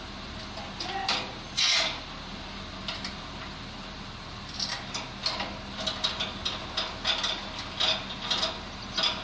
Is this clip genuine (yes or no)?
yes